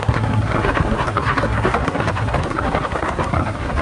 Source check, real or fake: fake